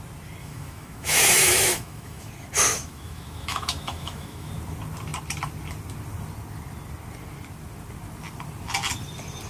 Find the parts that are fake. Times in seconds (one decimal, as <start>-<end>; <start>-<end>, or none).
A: 0.4-2.3; 2.7-4.5